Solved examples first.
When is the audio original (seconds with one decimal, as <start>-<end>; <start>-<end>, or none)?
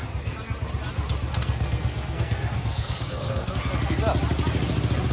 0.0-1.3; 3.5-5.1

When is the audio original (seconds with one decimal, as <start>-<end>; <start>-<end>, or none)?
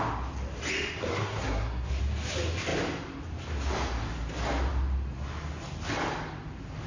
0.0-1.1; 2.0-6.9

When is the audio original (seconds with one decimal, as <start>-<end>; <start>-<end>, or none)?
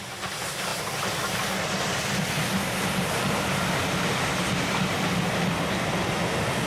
0.0-6.7